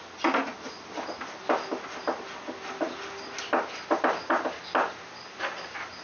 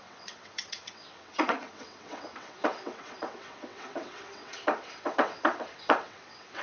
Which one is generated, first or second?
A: second